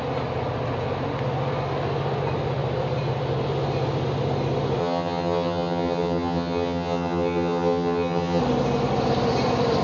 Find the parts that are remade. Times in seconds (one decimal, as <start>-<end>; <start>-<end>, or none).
4.8-8.4